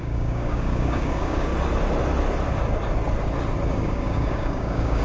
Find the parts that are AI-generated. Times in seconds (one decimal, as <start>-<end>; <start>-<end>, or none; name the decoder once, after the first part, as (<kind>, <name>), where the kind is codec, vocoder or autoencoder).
0.0-1.5 (codec, DAC); 3.7-5.0